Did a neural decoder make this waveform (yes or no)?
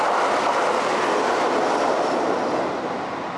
no